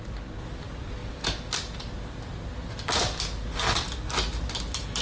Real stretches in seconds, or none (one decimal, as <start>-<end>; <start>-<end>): 0.0-5.0